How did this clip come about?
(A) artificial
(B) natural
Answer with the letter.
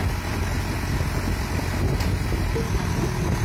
B